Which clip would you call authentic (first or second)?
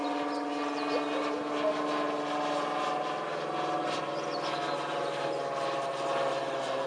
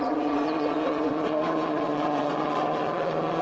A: first